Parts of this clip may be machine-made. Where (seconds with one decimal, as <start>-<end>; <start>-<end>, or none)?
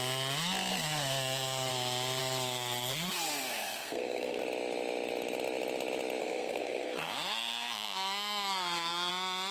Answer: 0.7-1.7; 2.2-4.4; 6.2-9.1